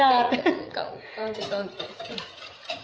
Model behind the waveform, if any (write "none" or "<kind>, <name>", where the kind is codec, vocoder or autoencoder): vocoder, Vocos